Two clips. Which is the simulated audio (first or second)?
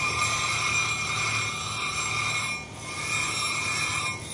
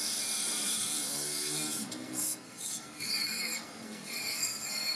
second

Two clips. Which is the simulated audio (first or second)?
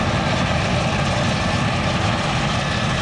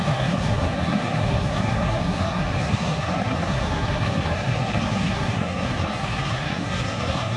second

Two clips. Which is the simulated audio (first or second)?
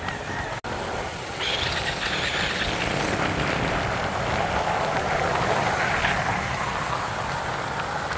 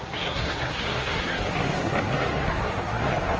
second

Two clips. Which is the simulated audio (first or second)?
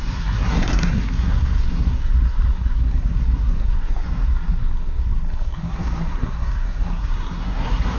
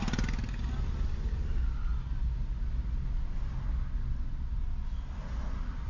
first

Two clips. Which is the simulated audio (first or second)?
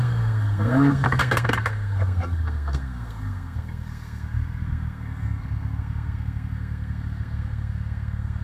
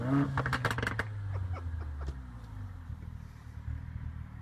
first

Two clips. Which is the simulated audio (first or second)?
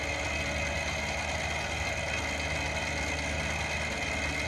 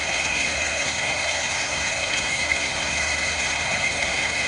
second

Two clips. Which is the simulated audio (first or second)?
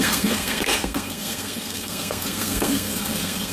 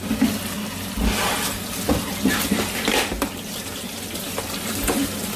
first